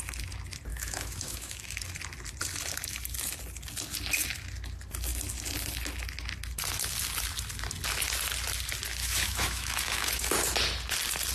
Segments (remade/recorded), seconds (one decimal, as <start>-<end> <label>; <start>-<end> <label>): 0.0-0.7 recorded; 0.7-1.8 remade; 1.8-9.0 recorded; 9.0-10.3 remade; 10.3-11.3 recorded